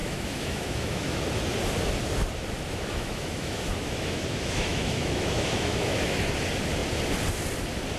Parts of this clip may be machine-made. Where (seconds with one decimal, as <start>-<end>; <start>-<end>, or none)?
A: 0.0-1.2; 2.7-6.2